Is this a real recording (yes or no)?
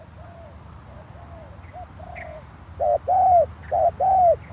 yes